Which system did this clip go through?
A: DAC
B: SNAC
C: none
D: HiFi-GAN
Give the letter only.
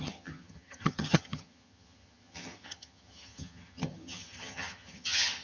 D